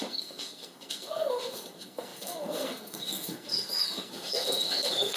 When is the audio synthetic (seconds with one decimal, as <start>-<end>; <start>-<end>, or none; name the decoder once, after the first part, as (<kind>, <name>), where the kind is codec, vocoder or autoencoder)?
0.0-5.2 (codec, SNAC)